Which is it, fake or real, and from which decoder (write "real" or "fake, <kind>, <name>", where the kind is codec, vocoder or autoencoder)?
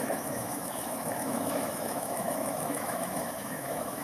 fake, autoencoder, DAC-VAE